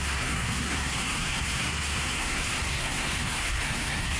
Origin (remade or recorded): remade